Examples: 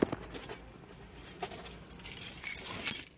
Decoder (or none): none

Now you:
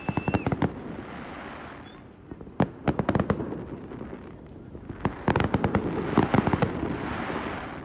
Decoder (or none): none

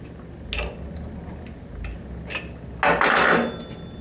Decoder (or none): none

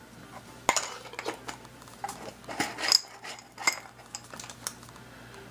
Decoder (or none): none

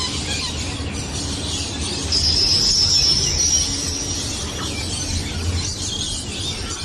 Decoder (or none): none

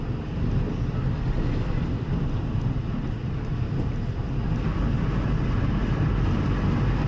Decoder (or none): none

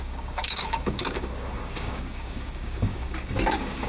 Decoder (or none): codec, DAC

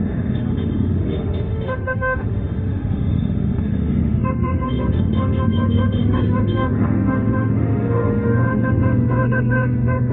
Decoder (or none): autoencoder, DAC-VAE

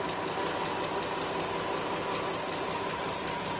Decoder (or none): none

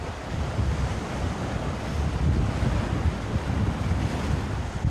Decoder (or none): none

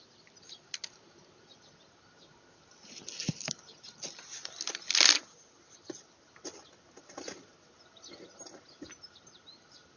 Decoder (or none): none